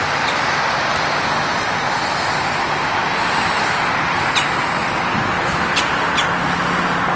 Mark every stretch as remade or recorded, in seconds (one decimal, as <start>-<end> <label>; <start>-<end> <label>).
0.0-7.2 recorded